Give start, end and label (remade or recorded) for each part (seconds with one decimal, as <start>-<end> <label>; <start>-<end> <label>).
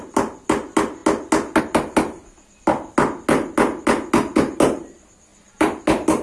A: 0.0-5.3 recorded; 5.3-5.8 remade; 5.8-6.2 recorded